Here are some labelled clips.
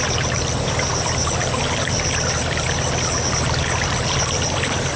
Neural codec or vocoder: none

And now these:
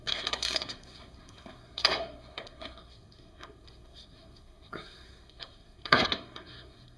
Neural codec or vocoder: codec, SNAC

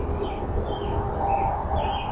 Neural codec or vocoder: none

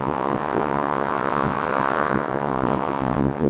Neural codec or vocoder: vocoder, WaveNeXt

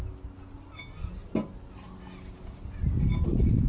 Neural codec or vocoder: none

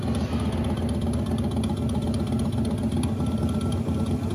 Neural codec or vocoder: none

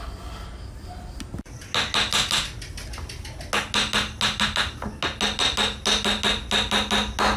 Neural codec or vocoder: none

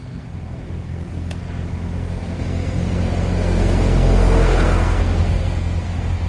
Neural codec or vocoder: codec, SNAC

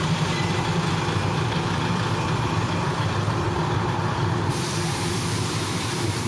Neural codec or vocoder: vocoder, BigVGAN v2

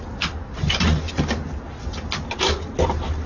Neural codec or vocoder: none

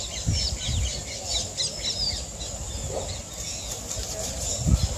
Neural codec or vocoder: none